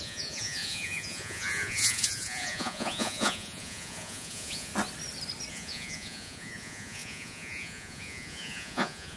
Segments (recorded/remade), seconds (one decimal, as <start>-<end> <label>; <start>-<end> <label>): 0.0-4.7 remade; 4.7-5.5 recorded; 5.5-9.2 remade